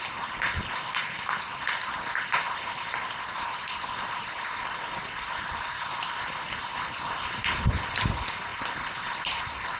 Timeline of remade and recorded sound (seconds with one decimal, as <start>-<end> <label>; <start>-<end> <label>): 0.0-9.8 recorded